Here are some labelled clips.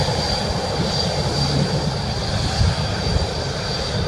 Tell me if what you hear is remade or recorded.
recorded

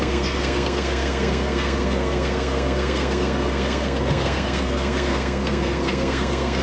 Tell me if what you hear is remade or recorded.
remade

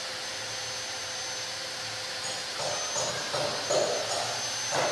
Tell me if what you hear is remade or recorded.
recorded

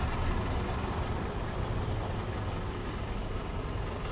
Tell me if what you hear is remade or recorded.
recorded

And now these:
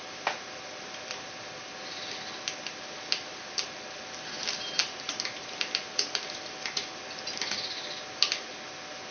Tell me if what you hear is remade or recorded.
recorded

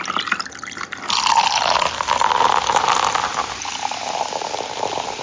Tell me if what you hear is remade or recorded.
recorded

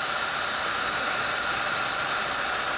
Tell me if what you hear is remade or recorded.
recorded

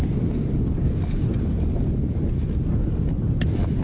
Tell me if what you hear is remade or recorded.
recorded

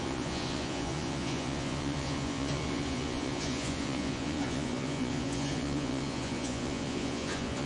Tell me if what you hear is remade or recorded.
remade